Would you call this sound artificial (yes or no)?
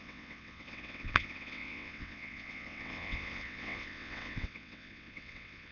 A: yes